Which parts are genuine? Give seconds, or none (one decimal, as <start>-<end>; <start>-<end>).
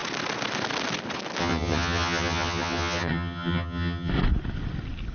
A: 0.0-1.4; 4.1-5.1